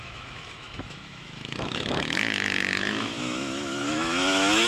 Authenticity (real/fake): fake